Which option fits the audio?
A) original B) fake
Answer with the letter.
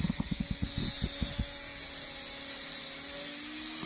A